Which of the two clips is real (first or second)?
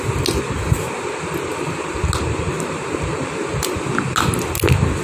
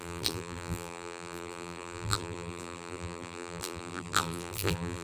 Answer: first